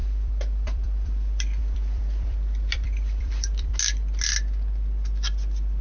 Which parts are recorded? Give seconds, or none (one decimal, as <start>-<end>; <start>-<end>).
3.7-5.8